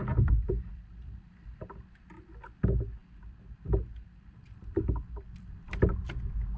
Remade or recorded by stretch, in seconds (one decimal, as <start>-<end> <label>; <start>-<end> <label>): 0.0-2.0 remade; 2.0-3.0 recorded; 3.0-5.9 remade; 5.9-6.6 recorded